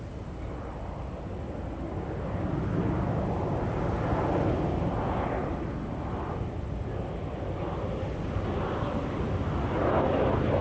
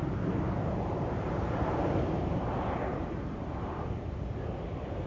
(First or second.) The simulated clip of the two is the second